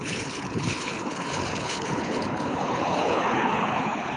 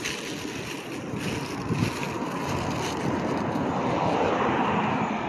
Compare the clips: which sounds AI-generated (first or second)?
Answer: first